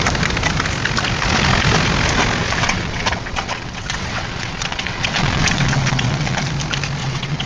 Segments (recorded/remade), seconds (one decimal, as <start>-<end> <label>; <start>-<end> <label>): 0.0-2.4 recorded; 2.4-6.4 remade; 6.4-7.0 recorded; 7.0-7.5 remade